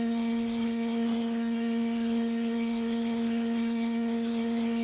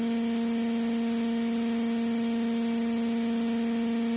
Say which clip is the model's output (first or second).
first